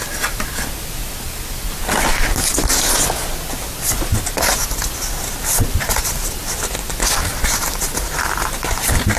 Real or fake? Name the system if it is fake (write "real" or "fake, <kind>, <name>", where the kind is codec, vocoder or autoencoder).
real